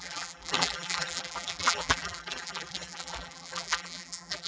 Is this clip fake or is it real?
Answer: fake